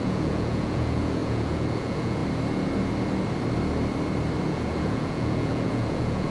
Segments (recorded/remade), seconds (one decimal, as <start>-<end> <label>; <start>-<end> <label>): 0.0-2.2 remade; 2.2-4.4 recorded; 4.4-6.3 remade